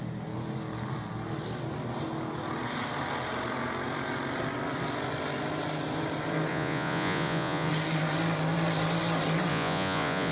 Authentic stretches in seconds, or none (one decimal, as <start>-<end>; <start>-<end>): 0.0-6.5; 7.7-9.5